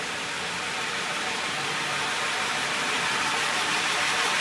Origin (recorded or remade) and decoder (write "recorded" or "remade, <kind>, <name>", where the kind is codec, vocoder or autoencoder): recorded